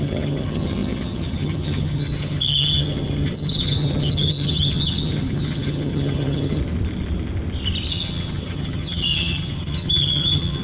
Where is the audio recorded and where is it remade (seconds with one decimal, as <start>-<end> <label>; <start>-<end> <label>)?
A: 0.0-6.6 remade; 6.6-7.9 recorded; 7.9-10.6 remade